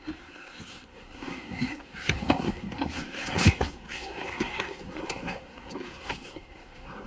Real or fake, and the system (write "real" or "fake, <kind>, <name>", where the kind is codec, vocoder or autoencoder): fake, codec, SNAC